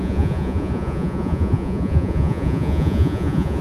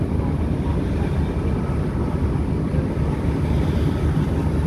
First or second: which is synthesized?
first